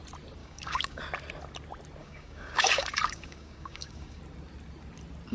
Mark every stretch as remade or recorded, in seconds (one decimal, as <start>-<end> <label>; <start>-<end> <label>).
0.0-0.4 recorded; 0.4-1.0 remade; 1.0-2.0 recorded; 2.0-4.2 remade; 4.2-5.3 recorded